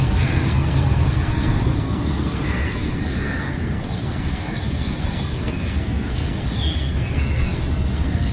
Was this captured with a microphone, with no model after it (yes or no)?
no